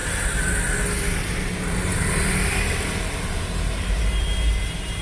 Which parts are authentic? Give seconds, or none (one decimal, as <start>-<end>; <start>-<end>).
0.0-3.0